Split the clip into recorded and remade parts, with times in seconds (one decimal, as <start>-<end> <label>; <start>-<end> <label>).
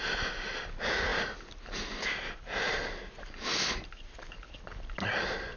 0.0-5.6 recorded